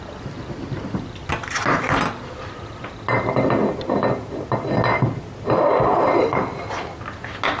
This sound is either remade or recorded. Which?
recorded